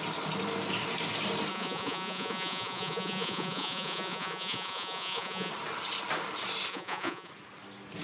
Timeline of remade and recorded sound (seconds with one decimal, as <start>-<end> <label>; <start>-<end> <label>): 0.0-1.5 recorded; 1.5-5.5 remade; 5.5-6.7 recorded; 6.7-7.3 remade; 7.3-8.0 recorded